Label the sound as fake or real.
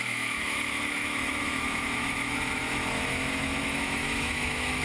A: fake